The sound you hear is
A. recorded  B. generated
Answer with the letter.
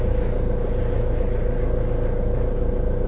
A